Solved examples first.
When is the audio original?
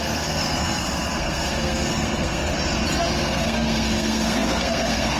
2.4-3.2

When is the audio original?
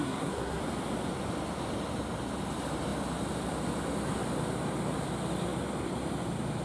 0.6-6.6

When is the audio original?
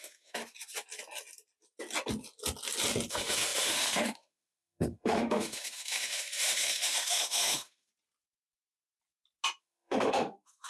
0.4-3.1; 7.9-9.6